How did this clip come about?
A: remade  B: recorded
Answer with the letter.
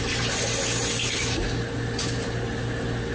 B